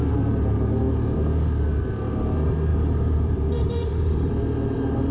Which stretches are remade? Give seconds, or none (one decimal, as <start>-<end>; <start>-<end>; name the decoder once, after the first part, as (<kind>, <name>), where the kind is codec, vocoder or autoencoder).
2.7-4.3 (vocoder, BigVGAN v2)